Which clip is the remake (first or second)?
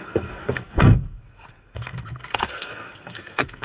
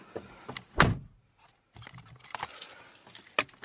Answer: first